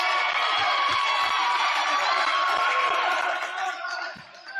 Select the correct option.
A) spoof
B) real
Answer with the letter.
A